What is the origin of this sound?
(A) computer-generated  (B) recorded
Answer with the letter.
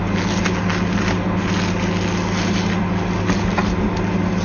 B